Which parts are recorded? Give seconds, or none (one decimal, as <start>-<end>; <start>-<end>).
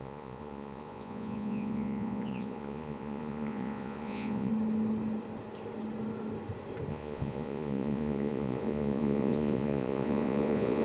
4.5-6.9